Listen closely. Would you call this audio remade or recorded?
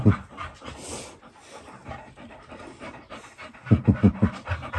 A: recorded